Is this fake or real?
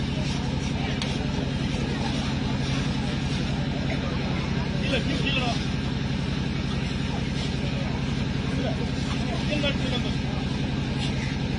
real